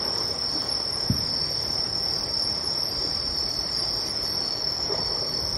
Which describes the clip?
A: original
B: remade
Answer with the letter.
A